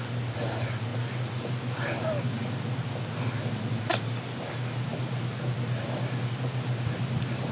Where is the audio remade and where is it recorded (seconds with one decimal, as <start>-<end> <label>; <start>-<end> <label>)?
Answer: 0.0-7.5 recorded